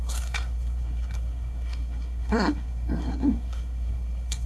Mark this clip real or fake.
fake